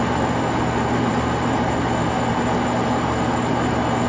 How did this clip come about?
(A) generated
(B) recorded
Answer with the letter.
B